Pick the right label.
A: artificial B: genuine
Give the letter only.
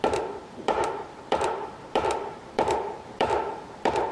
A